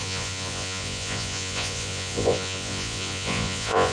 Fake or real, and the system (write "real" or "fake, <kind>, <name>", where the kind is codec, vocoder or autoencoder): fake, vocoder, Vocos